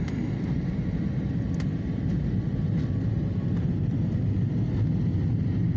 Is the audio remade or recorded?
recorded